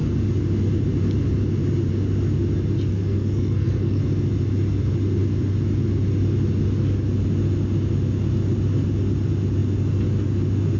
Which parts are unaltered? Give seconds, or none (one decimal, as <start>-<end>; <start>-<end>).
0.0-2.9; 4.0-10.8